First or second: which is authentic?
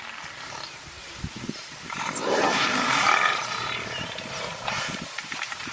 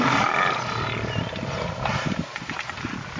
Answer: second